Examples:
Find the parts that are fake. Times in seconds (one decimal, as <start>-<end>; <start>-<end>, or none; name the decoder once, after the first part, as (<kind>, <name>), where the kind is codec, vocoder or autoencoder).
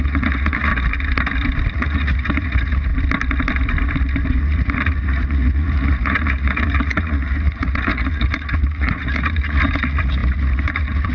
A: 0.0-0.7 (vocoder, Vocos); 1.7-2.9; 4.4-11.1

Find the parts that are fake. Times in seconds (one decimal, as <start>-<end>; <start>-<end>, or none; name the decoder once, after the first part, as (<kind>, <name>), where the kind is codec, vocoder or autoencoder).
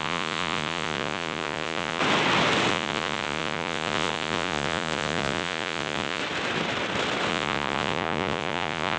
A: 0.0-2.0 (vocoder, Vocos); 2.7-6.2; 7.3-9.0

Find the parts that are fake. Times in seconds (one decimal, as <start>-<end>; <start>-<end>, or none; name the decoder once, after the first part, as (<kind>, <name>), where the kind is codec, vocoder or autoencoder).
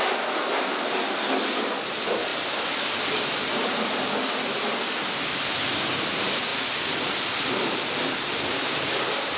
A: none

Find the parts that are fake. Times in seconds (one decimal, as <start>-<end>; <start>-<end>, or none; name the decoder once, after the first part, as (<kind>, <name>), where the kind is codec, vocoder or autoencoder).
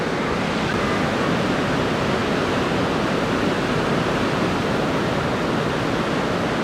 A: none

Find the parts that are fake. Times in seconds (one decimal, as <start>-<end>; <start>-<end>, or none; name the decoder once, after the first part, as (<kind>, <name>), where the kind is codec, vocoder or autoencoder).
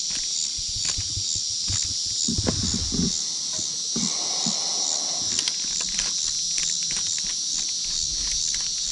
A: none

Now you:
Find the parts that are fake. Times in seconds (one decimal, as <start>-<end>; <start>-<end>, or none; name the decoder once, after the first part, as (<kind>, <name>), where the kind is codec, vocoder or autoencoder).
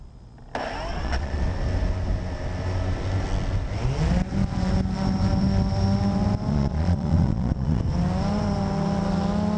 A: 0.9-1.4 (vocoder, Vocos); 6.5-7.8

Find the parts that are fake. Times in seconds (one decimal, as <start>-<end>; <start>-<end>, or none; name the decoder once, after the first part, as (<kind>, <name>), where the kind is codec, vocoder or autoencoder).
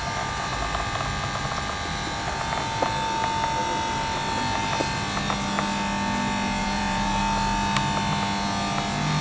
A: 6.6-7.2 (vocoder, Vocos)